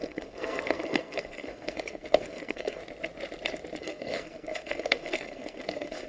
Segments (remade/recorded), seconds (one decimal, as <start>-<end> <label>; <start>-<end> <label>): 0.0-2.8 remade; 2.8-3.8 recorded; 3.8-6.1 remade